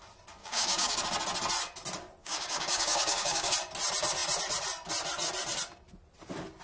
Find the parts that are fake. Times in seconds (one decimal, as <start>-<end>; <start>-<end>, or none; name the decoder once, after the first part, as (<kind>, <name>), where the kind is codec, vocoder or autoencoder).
0.4-1.0 (codec, DAC); 2.2-3.5